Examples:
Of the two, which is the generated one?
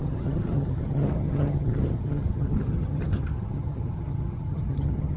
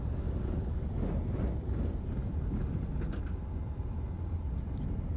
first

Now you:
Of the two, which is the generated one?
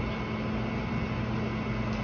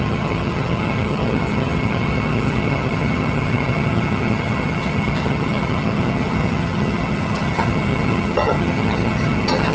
second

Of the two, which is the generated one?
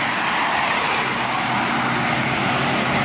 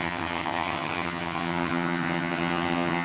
second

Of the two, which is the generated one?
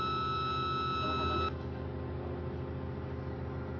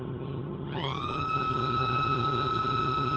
second